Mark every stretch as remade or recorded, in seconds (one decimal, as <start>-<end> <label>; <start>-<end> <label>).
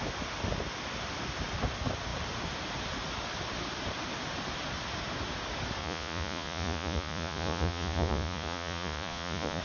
0.0-5.8 recorded; 5.8-9.6 remade